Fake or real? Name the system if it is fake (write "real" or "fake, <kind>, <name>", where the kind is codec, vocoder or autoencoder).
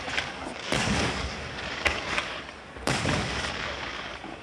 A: fake, codec, DAC